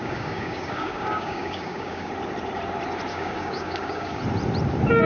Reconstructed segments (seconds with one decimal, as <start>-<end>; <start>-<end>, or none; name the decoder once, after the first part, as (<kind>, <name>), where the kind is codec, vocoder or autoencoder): 0.0-2.1 (codec, DAC); 3.1-4.2